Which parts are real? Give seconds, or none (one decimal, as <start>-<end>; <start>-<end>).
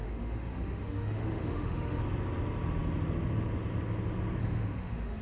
2.0-4.4